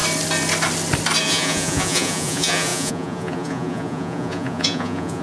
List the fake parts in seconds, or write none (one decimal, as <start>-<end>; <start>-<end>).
1.2-5.2